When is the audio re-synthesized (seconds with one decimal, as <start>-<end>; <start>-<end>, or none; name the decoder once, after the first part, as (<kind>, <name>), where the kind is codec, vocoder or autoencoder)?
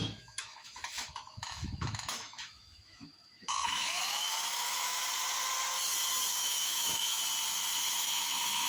0.0-5.0 (autoencoder, DAC-VAE); 6.3-7.2; 7.9-8.7